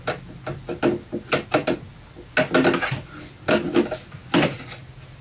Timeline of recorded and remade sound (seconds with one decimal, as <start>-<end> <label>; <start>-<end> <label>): 0.0-5.2 recorded